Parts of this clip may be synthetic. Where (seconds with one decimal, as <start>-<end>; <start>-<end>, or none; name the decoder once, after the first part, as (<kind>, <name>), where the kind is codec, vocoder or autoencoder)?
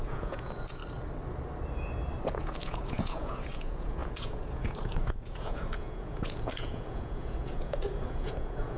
0.0-0.8 (vocoder, Vocos); 2.2-8.8